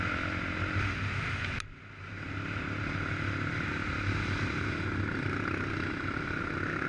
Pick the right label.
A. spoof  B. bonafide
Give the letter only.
B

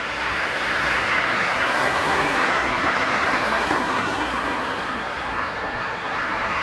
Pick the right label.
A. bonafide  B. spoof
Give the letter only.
B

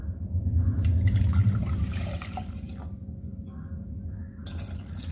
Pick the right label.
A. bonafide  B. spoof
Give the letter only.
A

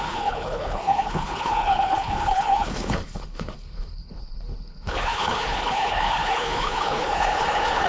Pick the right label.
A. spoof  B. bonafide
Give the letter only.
A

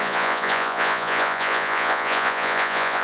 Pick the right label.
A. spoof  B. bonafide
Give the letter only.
A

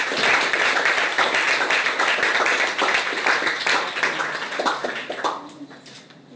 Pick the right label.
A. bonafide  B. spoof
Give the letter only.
A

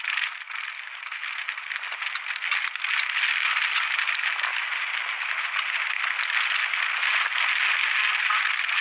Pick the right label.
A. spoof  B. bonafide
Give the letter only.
B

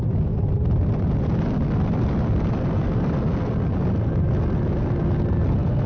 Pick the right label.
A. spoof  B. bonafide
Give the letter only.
B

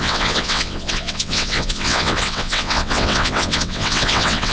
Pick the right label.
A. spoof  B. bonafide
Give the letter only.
A